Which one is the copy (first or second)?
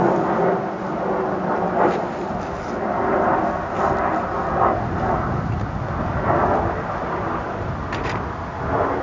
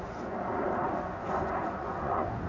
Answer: second